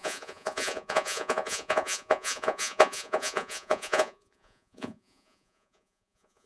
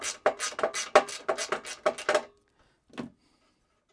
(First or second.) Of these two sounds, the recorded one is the second